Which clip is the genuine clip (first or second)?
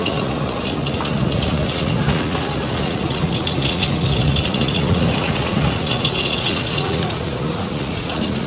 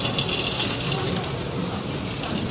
second